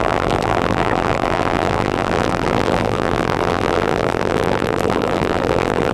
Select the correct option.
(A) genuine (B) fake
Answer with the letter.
B